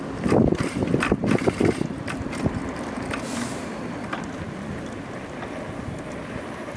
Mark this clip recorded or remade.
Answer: recorded